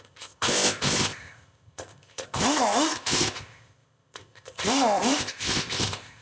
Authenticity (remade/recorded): remade